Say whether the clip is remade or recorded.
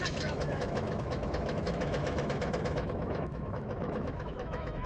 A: remade